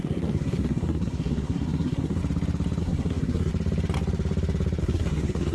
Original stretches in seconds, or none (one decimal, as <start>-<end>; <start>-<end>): 2.2-2.8; 3.5-4.8